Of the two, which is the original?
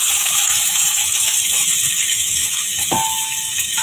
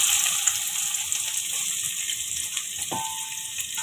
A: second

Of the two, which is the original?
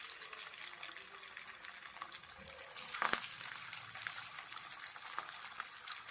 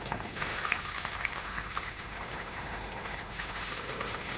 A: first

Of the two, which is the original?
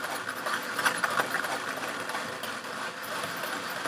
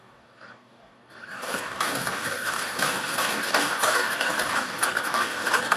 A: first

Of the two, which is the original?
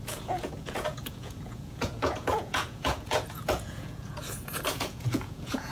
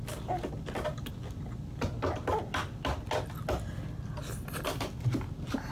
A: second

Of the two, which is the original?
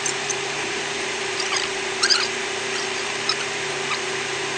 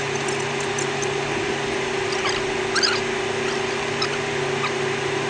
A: second